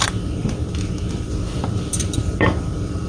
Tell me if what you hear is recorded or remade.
remade